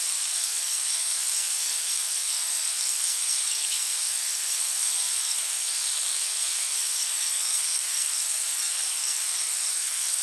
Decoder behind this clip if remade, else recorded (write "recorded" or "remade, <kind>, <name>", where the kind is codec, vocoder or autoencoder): remade, codec, SNAC